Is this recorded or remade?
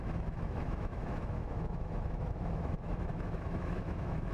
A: remade